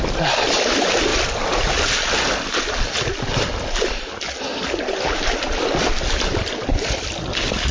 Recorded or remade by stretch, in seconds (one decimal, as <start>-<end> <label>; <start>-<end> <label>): 0.0-7.7 recorded